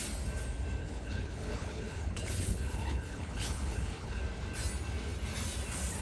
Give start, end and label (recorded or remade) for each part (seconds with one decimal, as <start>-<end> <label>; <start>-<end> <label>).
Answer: 0.0-0.8 recorded; 0.8-4.2 remade; 4.2-6.0 recorded